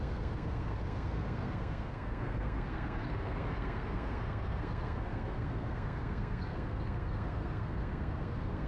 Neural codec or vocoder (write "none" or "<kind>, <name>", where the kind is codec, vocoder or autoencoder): codec, SNAC